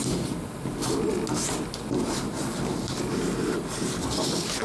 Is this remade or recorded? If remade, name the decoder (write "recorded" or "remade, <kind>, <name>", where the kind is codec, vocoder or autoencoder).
recorded